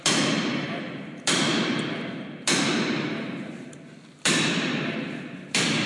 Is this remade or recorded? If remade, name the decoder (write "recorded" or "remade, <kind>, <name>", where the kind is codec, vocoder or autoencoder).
remade, vocoder, BigVGAN v2